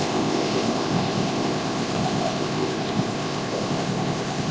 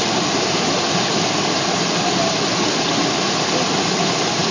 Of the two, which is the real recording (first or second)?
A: second